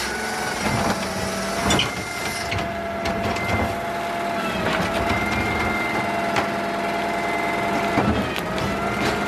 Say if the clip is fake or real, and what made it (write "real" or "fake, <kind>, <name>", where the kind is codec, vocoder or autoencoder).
real